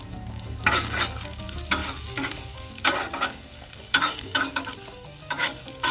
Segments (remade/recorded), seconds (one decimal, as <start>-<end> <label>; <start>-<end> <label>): 0.0-5.9 remade